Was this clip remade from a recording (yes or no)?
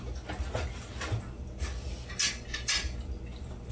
no